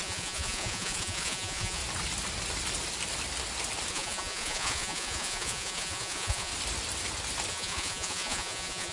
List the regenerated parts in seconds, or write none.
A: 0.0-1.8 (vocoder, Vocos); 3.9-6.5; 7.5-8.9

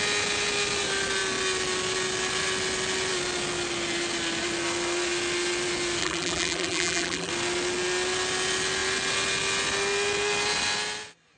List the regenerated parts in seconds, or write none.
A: 6.0-7.3 (vocoder, BigVGAN v2)